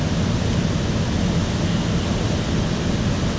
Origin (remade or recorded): recorded